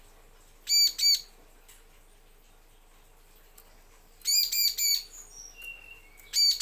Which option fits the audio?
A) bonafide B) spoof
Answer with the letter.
A